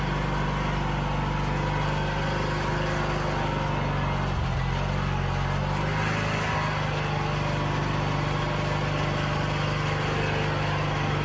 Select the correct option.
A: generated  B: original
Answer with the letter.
B